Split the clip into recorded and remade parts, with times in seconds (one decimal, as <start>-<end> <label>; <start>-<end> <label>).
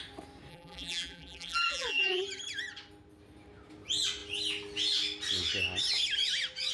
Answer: 0.0-0.5 recorded; 0.5-2.2 remade; 2.2-6.7 recorded